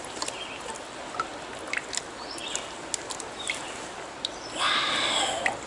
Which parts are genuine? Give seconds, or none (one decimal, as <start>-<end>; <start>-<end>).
0.0-5.7